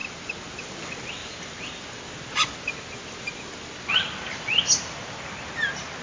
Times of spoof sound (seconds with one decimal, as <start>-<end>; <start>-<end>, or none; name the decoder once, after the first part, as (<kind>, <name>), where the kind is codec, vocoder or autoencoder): none